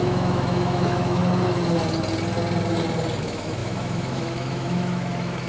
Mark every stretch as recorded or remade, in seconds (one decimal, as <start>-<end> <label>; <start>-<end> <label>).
0.0-1.2 remade; 1.2-3.2 recorded; 3.2-5.5 remade